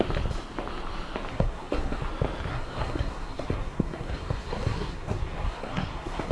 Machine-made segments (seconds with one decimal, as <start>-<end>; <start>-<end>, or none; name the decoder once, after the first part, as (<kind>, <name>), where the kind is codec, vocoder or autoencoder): 1.3-2.0 (codec, SNAC); 2.5-6.3